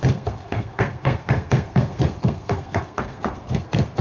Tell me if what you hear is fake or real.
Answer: fake